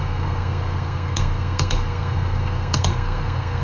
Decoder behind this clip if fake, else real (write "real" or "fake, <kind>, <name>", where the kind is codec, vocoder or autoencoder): fake, codec, SNAC